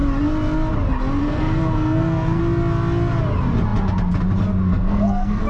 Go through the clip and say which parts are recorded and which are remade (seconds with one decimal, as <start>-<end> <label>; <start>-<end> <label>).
0.0-1.2 recorded; 1.2-2.4 remade; 2.4-4.7 recorded; 4.7-5.5 remade